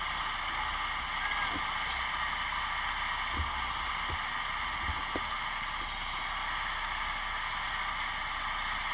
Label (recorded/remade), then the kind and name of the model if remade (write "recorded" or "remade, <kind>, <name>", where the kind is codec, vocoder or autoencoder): recorded